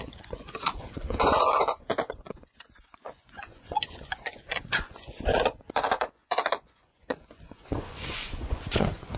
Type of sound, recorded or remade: remade